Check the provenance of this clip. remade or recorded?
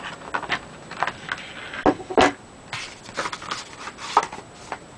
recorded